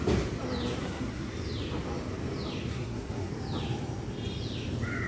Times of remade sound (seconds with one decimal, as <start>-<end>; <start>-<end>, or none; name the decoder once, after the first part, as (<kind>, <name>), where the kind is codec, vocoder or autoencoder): 0.8-1.3 (codec, SNAC); 2.7-3.3